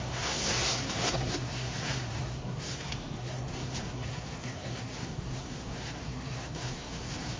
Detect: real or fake fake